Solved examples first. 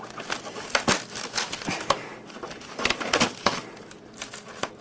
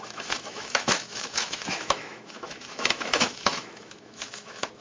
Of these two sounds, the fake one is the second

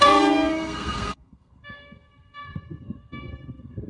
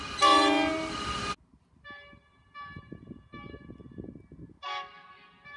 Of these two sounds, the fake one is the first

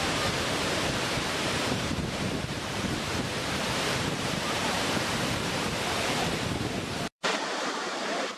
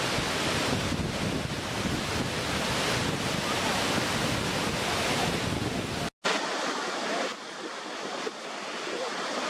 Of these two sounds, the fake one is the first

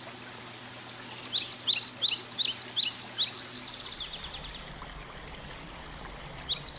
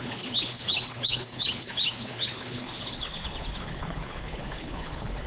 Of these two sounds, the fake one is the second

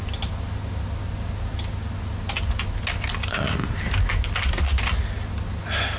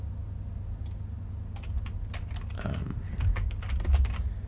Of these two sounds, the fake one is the second